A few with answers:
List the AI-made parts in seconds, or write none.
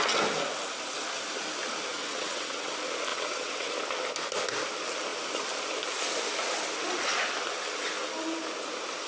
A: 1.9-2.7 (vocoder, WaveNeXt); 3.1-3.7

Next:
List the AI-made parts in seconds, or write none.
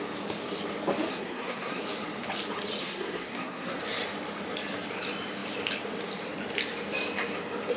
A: 1.1-1.8 (codec, SNAC); 2.8-3.8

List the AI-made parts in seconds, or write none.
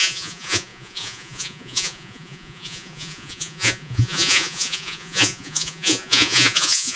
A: 0.0-7.0 (vocoder, Vocos)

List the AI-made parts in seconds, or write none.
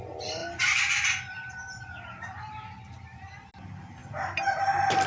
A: 0.4-3.5 (vocoder, BigVGAN v2); 4.0-5.1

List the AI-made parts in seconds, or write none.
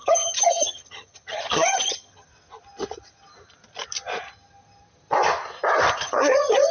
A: 0.0-2.3 (vocoder, HiFi-GAN); 5.9-6.7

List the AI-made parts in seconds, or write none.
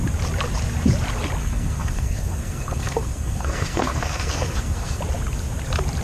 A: 1.4-5.0 (codec, SNAC)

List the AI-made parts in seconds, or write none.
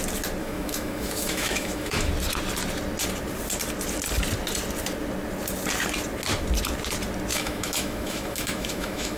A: 0.4-2.1 (autoencoder, DAC-VAE); 7.3-9.2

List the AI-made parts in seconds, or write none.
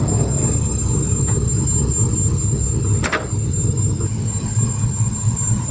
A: none